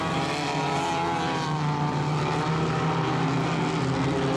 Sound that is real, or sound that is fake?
real